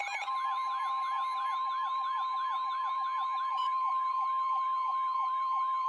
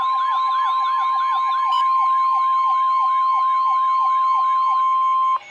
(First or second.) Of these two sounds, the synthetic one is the first